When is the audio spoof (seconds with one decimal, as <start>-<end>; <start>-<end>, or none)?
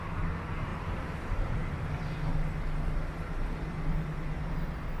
0.0-2.3